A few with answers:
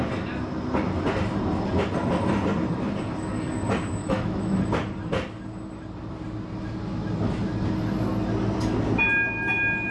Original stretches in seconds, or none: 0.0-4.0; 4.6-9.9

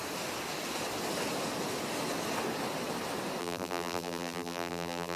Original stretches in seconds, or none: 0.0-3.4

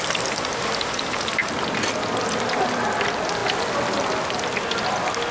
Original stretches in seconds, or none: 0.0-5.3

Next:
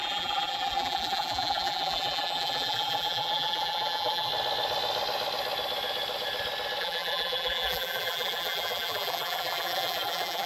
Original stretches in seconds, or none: 4.3-6.8

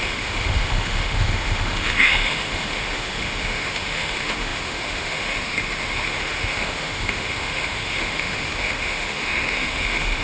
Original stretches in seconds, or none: none